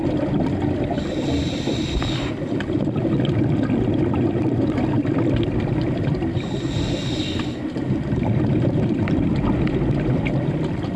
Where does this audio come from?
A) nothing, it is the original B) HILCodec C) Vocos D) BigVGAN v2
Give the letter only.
A